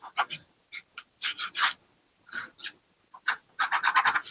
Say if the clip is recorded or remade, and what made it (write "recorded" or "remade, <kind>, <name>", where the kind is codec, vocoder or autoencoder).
recorded